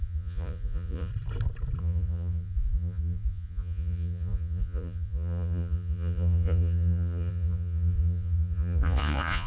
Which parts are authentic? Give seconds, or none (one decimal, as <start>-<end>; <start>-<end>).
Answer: 1.1-1.8